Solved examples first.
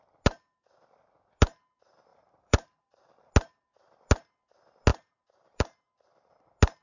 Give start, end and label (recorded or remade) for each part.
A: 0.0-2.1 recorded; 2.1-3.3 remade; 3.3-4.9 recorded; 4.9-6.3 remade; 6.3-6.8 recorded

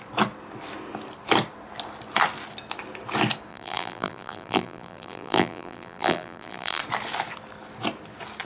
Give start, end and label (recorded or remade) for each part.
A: 0.0-3.5 recorded; 3.5-6.8 remade; 6.8-8.5 recorded

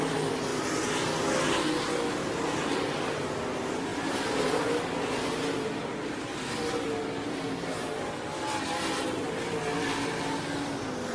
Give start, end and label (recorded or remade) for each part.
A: 0.0-0.5 recorded; 0.5-1.0 remade; 1.0-11.1 recorded